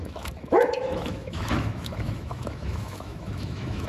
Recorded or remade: remade